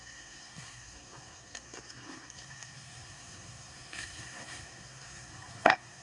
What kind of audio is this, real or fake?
fake